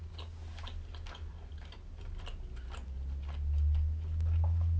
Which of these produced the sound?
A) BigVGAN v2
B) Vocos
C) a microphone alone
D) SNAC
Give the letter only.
C